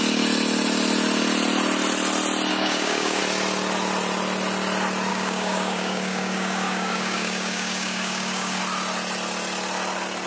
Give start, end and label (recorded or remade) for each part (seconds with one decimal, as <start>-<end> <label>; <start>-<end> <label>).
0.0-2.5 recorded; 2.5-3.2 remade; 3.2-5.1 recorded; 5.1-8.6 remade; 8.6-10.3 recorded